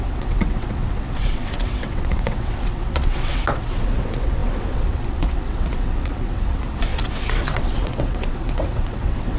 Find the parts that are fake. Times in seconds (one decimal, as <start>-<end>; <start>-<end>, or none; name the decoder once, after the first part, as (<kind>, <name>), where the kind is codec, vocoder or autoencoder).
0.0-9.4 (vocoder, WaveNeXt)